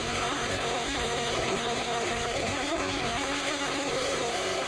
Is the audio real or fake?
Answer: fake